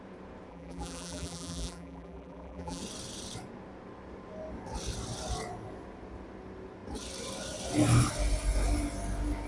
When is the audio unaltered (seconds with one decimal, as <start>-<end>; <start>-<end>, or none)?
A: 0.0-0.5; 2.8-9.5